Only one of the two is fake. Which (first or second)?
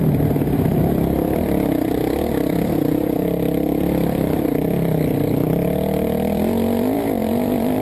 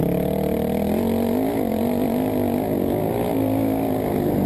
first